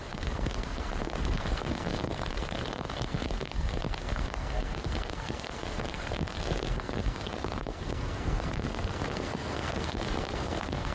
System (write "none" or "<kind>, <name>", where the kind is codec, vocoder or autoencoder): codec, SNAC